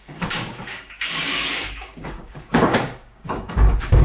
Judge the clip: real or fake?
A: fake